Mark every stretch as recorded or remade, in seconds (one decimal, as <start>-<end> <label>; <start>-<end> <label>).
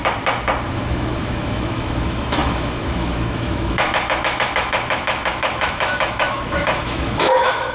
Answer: 0.0-0.7 recorded; 0.7-7.7 remade